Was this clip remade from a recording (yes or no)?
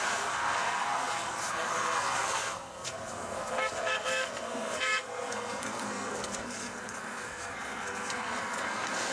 yes